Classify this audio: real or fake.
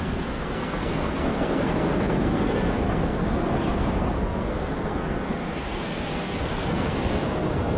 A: fake